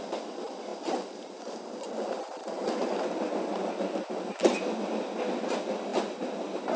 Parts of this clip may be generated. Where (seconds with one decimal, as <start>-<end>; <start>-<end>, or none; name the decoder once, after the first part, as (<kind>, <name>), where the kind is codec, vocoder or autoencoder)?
none